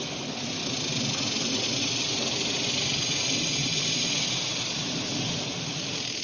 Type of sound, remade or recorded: recorded